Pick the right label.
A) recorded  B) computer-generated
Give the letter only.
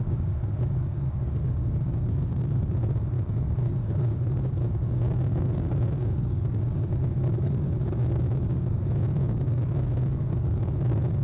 B